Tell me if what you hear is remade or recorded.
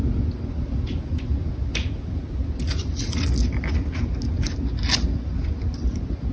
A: recorded